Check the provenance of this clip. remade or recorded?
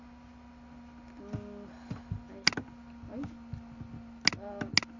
recorded